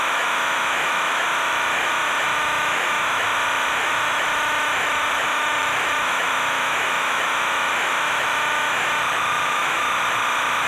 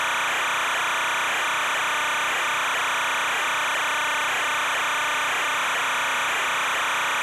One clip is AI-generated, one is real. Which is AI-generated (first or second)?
first